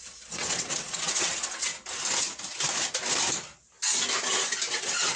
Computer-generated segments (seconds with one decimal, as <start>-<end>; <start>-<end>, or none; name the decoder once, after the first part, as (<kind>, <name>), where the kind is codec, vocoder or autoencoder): 0.0-1.7 (vocoder, WaveNeXt); 4.7-5.2